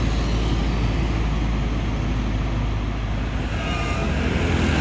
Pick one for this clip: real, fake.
real